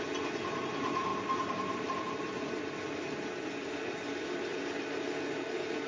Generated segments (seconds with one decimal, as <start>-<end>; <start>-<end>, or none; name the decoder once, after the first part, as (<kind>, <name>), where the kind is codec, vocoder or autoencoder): none

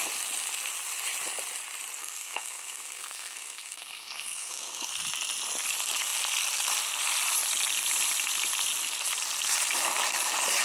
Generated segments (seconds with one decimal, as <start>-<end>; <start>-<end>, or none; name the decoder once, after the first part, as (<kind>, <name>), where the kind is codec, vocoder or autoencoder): 2.0-4.9 (codec, SNAC)

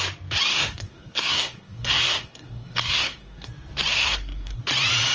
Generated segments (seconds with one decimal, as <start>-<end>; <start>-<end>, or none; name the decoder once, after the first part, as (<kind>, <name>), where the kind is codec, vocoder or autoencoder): 0.5-3.5 (codec, SNAC); 3.9-4.6

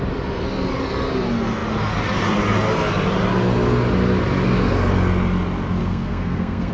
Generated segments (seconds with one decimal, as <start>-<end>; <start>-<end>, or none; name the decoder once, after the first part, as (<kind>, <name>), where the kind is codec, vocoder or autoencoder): 5.8-6.7 (codec, SNAC)

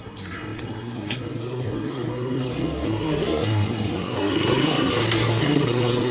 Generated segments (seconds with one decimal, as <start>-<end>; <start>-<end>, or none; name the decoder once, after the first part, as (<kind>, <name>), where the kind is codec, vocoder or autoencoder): 0.0-6.1 (codec, SNAC)